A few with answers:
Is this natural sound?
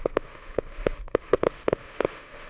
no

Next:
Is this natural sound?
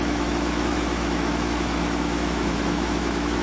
no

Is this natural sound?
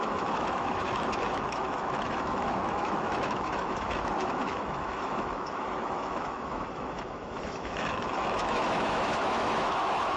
no